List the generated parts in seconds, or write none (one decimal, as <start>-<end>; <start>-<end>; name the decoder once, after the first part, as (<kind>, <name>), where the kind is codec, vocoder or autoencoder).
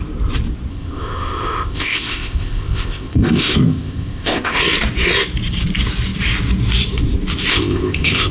0.7-4.6 (codec, ZipCodec); 7.5-8.3